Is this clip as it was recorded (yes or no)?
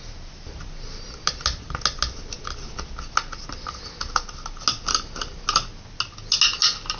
yes